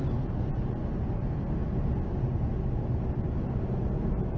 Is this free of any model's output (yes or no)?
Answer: yes